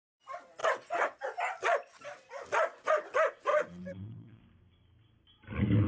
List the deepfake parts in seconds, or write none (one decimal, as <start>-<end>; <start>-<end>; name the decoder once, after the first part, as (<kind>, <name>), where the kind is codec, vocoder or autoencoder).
0.6-1.2 (vocoder, WaveNeXt); 3.5-4.4